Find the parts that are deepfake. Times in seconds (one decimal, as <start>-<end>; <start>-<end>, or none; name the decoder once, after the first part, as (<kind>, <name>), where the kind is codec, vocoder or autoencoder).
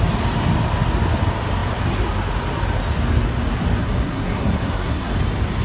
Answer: 3.8-5.1 (codec, SNAC)